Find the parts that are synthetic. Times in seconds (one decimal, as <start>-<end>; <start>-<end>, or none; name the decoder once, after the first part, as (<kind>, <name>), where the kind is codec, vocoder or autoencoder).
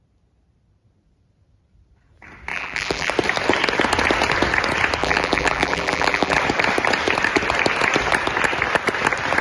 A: 2.5-3.1 (vocoder, BigVGAN v2); 5.0-6.4